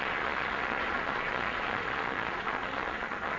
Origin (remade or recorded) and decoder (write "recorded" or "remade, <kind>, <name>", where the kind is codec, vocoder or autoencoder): remade, vocoder, Vocos